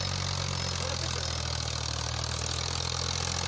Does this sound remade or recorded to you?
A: recorded